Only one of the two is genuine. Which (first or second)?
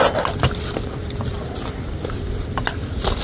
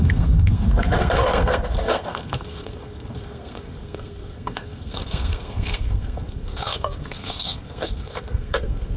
first